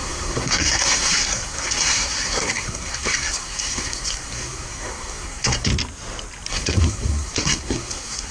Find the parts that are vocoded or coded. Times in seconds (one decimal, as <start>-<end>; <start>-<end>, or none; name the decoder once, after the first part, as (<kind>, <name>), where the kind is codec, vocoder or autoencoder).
0.0-5.7 (codec, SNAC); 6.5-8.3